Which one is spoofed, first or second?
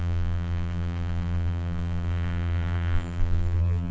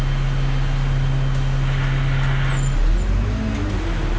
first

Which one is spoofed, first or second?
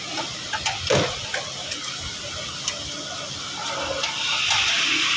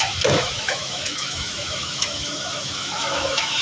second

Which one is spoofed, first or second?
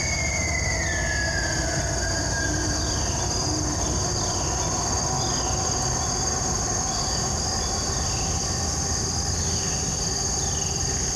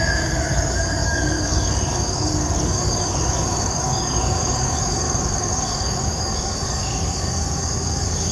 second